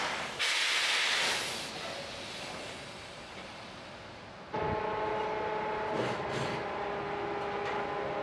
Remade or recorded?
recorded